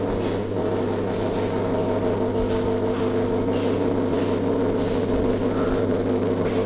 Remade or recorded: recorded